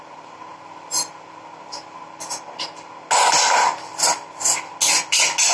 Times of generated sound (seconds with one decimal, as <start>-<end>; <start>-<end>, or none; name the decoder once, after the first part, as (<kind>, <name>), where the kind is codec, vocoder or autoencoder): none